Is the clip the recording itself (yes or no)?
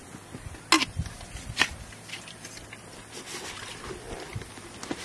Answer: yes